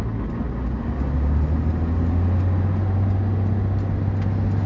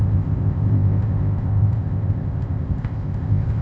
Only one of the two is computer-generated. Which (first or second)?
second